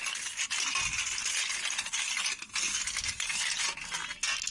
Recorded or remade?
recorded